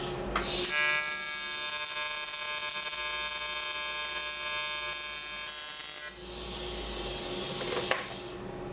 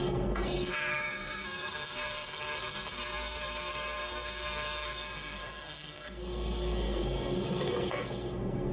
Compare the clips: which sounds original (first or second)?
first